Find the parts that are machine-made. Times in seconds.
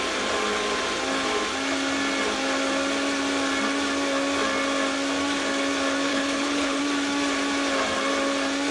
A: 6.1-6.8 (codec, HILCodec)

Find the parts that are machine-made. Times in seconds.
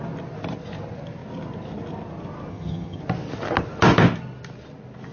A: 2.5-3.0 (vocoder, HiFi-GAN)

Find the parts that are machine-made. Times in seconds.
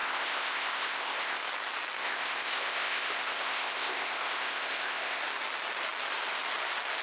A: 0.0-1.4 (codec, ZipCodec); 2.0-5.2